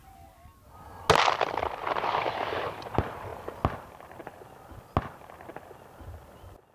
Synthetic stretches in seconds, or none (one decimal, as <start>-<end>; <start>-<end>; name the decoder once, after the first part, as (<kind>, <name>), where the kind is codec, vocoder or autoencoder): none